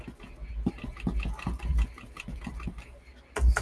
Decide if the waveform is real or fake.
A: real